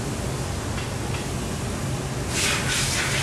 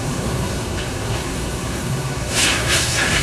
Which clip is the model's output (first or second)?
second